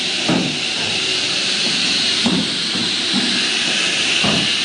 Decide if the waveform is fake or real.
fake